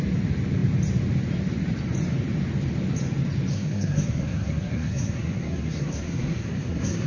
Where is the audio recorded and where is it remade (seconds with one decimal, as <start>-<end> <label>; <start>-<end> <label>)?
0.0-3.5 recorded; 3.5-7.1 remade